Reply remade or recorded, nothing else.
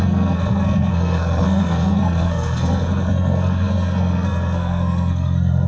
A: remade